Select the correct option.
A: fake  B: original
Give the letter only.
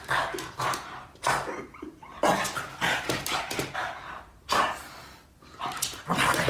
B